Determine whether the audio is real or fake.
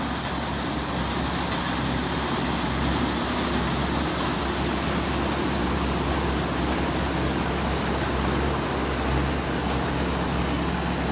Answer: real